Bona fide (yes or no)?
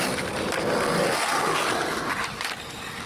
yes